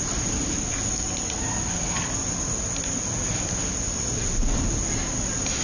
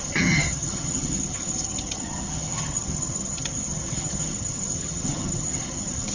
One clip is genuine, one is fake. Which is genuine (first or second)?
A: first